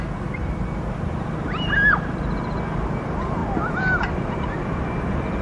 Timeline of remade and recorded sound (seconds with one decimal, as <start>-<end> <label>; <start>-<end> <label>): 0.0-5.4 recorded